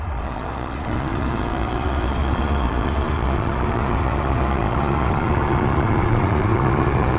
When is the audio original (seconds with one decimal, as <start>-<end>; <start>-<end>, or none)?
none